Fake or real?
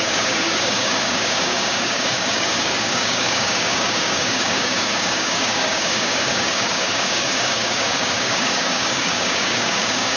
fake